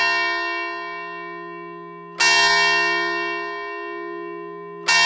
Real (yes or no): yes